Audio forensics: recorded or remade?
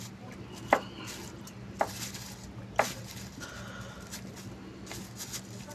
recorded